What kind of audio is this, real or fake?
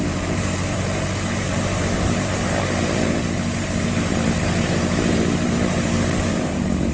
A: fake